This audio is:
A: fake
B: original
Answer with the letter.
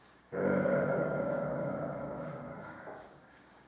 A